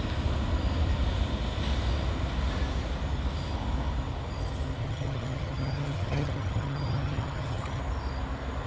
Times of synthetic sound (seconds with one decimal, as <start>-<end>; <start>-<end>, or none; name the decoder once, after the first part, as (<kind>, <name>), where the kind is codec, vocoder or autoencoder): 4.8-7.8 (vocoder, HiFi-GAN)

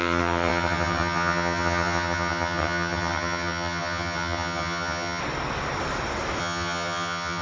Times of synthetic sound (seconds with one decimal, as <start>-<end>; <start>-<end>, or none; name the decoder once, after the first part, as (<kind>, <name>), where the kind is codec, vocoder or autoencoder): 0.0-5.2 (vocoder, HiFi-GAN); 6.4-7.4

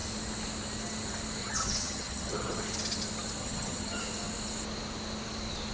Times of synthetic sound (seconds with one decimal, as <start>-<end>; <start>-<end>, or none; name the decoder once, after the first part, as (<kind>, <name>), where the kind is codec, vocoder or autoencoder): 1.4-2.6 (vocoder, HiFi-GAN); 3.4-4.0

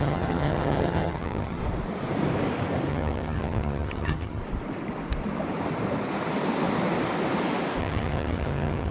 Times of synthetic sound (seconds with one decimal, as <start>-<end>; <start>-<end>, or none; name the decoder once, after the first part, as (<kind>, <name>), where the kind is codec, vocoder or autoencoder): 0.0-1.6 (vocoder, HiFi-GAN); 2.9-4.4; 7.8-8.9

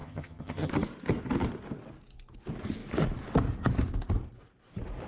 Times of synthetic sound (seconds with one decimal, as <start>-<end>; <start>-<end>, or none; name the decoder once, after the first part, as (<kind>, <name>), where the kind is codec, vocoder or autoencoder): 0.0-0.7 (vocoder, HiFi-GAN)

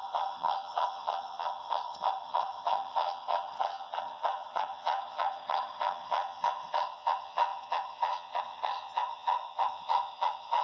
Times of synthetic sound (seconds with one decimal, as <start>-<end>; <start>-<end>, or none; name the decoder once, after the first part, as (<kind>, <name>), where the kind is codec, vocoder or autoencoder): 0.0-10.6 (vocoder, HiFi-GAN)